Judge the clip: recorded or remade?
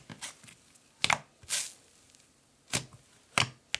recorded